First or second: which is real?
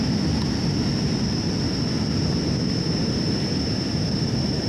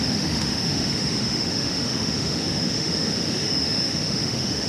first